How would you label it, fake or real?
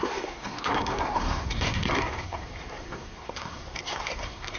fake